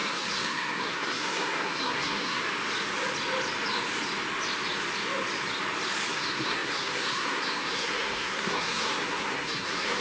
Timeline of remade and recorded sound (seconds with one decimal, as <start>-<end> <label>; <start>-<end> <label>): 0.0-2.4 remade; 2.4-6.1 recorded; 6.1-10.0 remade